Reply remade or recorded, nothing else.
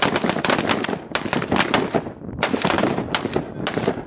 recorded